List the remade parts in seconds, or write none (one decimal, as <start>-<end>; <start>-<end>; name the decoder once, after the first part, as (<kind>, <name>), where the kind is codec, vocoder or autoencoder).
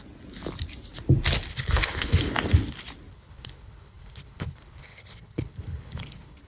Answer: 1.5-2.2 (codec, HILCodec); 3.1-6.5